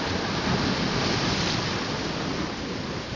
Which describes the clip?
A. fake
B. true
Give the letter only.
B